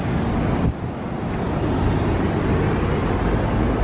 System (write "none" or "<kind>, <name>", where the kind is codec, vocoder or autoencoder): none